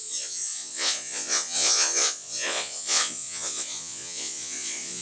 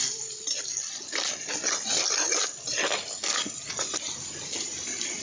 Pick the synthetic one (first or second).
first